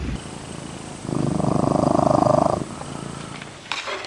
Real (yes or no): no